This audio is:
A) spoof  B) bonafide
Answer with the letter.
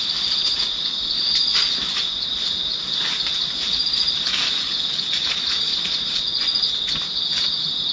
B